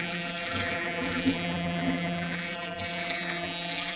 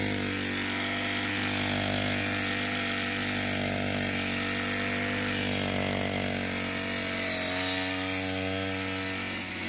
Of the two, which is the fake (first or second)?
first